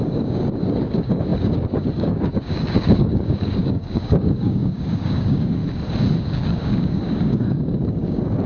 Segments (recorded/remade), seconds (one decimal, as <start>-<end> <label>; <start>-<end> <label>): 0.0-5.6 remade; 5.6-6.2 recorded; 6.2-8.5 remade